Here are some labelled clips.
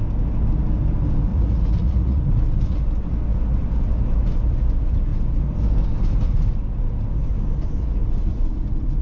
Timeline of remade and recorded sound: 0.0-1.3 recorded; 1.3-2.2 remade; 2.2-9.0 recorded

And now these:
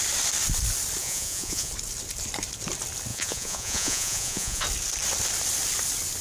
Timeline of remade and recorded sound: 0.0-1.0 recorded; 1.0-1.7 remade; 1.7-3.1 recorded; 3.1-4.6 remade; 4.6-6.2 recorded

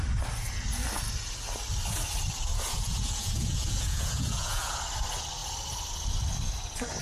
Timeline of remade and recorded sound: 0.0-2.5 recorded; 2.5-4.8 remade; 4.8-7.0 recorded

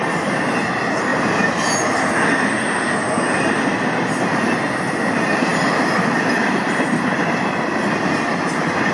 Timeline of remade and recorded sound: 0.0-8.9 recorded

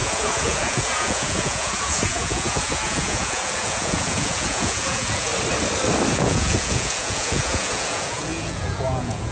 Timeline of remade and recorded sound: 0.0-5.3 remade; 5.3-6.1 recorded; 6.1-9.3 remade

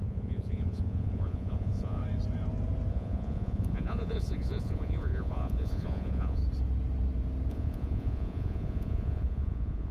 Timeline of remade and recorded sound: 0.0-2.0 remade; 2.0-2.9 recorded; 2.9-6.4 remade; 6.4-7.5 recorded; 7.5-9.9 remade